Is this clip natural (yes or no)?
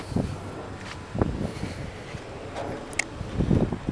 yes